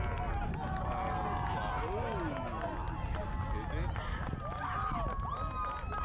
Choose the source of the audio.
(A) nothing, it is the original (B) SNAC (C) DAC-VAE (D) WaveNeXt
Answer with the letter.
A